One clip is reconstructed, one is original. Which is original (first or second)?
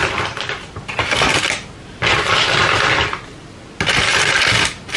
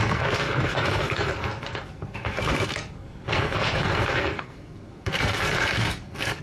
first